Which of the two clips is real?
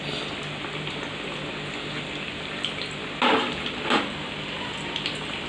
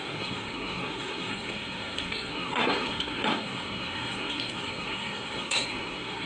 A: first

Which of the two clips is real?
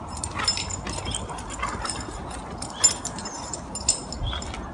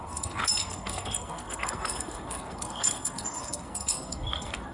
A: first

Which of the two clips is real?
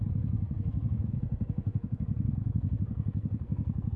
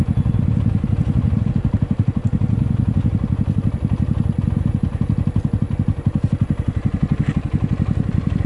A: second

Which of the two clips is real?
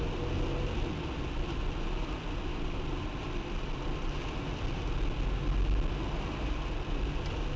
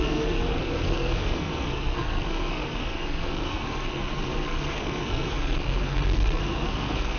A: first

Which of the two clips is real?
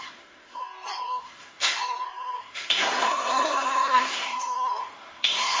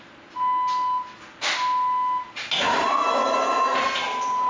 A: second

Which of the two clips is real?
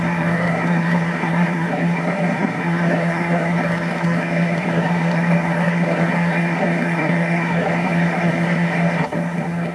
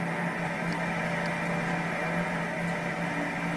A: second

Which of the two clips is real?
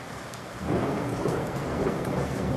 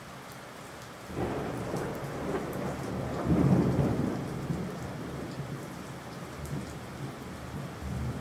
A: second